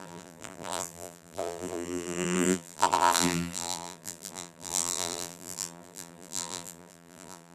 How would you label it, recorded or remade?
remade